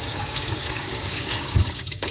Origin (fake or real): fake